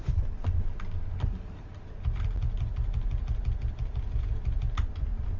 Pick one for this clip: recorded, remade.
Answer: recorded